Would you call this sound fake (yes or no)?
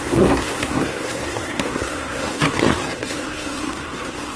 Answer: yes